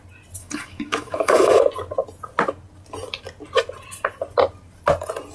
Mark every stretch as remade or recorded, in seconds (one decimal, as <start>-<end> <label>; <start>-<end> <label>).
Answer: 0.0-0.4 recorded; 0.4-1.6 remade; 1.6-5.3 recorded